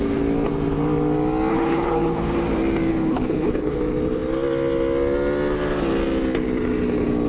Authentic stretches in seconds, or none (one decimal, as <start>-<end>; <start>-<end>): 0.0-1.5; 2.4-2.9; 3.8-7.3